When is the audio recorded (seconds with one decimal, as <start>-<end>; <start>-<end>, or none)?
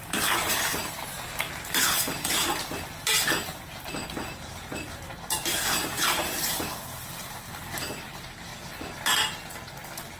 8.5-10.2